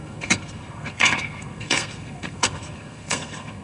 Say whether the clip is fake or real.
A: fake